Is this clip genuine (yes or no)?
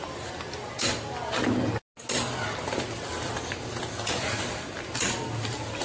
yes